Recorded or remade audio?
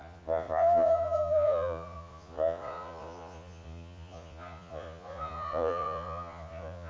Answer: remade